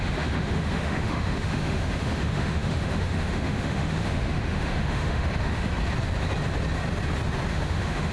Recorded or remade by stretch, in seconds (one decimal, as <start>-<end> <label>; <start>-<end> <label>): 0.0-5.7 remade; 5.7-7.5 recorded; 7.5-8.1 remade